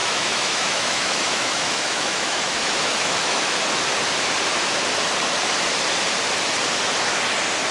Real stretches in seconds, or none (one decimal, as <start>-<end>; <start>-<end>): 3.6-7.7